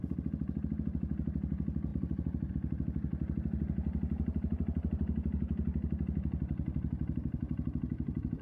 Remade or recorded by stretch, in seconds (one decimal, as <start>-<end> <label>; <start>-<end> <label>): 0.0-1.9 recorded; 1.9-2.5 remade; 2.5-8.4 recorded